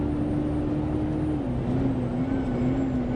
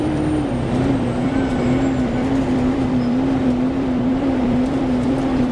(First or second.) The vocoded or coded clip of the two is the second